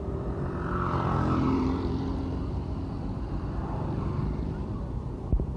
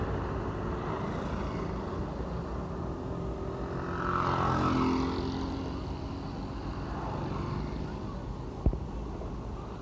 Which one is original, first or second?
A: second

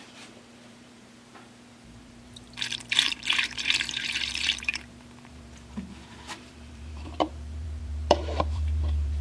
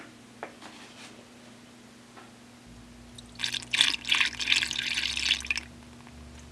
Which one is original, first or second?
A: second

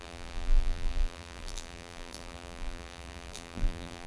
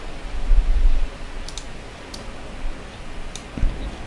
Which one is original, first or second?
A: second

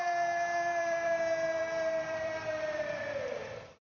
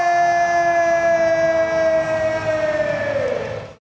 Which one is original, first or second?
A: second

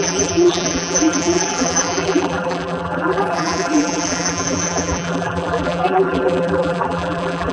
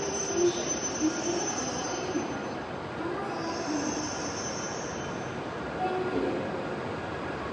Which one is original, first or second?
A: second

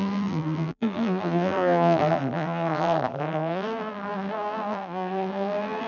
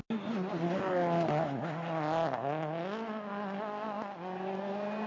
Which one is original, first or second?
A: second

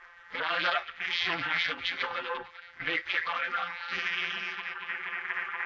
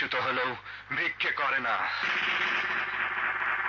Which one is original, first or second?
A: second